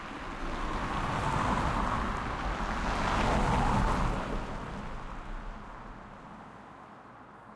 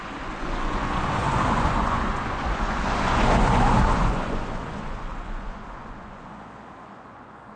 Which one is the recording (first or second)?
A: first